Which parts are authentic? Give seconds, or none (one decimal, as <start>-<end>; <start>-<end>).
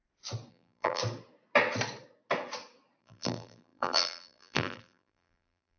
0.0-0.5; 1.0-3.0